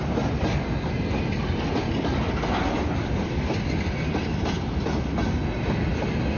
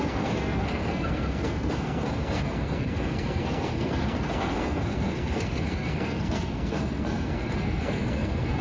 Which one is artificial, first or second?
second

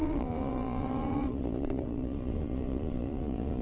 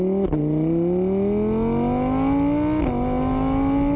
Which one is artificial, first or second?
first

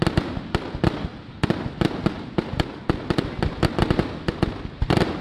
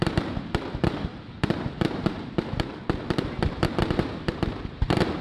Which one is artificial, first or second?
second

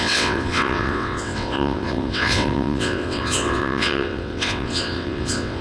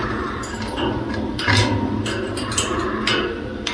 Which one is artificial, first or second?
first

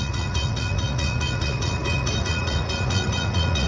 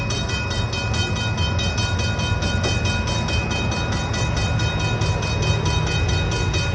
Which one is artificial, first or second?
first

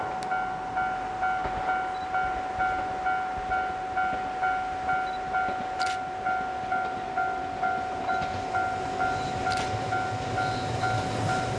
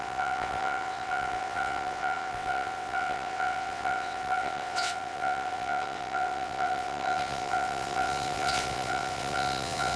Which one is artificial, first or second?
second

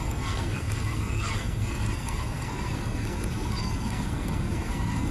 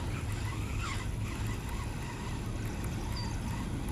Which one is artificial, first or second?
first